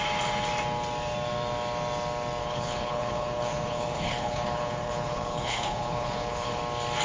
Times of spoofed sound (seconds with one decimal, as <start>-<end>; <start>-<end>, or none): 2.4-6.6